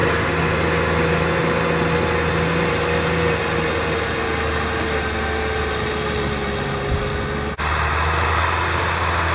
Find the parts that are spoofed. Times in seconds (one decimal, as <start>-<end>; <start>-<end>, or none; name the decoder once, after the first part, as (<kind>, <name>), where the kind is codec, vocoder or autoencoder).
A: none